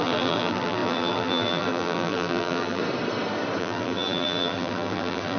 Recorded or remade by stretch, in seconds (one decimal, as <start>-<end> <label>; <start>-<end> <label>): 0.0-2.8 remade; 2.8-3.6 recorded; 3.6-5.4 remade